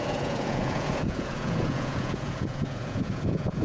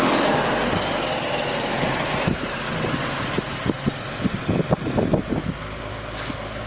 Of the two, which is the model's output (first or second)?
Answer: first